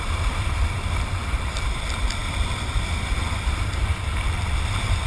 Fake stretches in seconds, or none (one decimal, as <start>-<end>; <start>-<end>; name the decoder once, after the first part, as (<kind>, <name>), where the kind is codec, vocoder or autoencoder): none

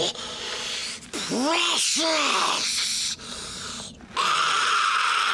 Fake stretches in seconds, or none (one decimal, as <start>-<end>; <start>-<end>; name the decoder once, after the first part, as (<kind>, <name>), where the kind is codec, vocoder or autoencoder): none

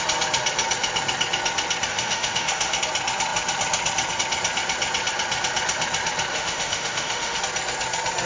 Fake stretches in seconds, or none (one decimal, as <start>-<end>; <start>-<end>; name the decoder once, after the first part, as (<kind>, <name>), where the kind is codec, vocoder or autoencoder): 1.9-2.8 (autoencoder, DAC-VAE); 6.3-7.4

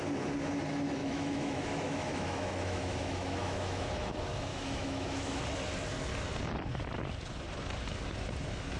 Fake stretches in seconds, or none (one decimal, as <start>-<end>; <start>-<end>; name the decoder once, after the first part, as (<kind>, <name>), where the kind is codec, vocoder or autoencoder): 1.0-4.1 (autoencoder, DAC-VAE); 4.5-5.4

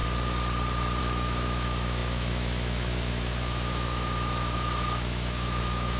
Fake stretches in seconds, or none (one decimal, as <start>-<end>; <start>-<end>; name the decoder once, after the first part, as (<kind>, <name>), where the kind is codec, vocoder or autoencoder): 1.0-6.0 (autoencoder, DAC-VAE)

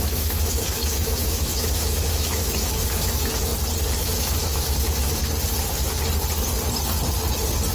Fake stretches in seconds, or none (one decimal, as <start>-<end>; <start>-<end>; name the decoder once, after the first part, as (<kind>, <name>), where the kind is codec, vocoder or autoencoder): 0.0-3.5 (autoencoder, DAC-VAE); 4.0-5.2

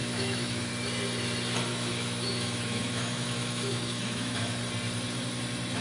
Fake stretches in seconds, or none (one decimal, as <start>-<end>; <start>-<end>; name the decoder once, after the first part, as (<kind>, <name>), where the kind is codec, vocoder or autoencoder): 0.0-0.7 (autoencoder, DAC-VAE); 1.7-4.6